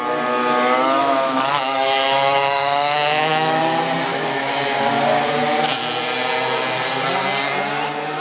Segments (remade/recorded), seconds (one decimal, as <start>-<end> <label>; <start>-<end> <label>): 0.0-1.0 recorded; 1.0-3.6 remade; 3.6-4.1 recorded; 4.1-4.9 remade; 4.9-8.2 recorded